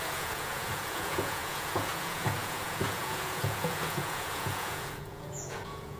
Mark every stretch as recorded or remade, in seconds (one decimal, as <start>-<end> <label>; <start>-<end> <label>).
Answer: 0.0-6.0 remade